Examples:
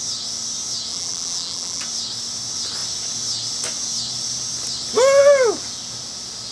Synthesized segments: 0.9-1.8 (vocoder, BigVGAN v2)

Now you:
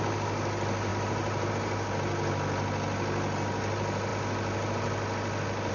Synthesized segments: 0.9-1.5 (vocoder, BigVGAN v2)

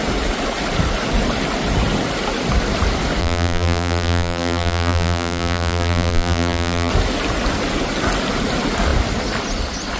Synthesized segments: 3.2-6.9 (vocoder, BigVGAN v2)

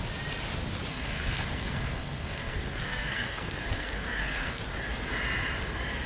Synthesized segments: 0.9-4.6 (codec, SNAC)